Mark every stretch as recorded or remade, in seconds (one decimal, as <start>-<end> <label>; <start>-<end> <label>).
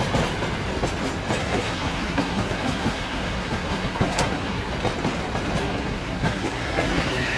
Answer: 0.0-1.4 recorded; 1.4-4.7 remade; 4.7-5.6 recorded; 5.6-7.4 remade